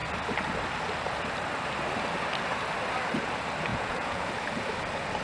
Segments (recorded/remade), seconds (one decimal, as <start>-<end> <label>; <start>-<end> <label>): 0.0-3.7 recorded; 3.7-4.3 remade; 4.3-5.2 recorded